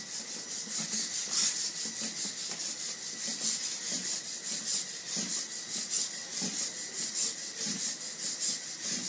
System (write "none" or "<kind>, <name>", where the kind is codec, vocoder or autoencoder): none